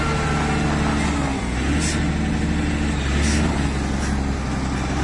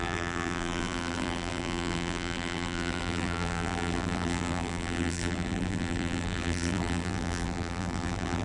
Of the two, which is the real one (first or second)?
first